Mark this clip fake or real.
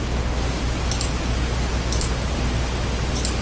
real